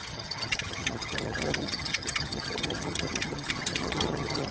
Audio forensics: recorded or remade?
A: remade